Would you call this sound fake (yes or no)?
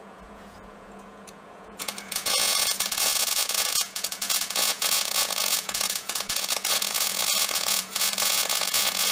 yes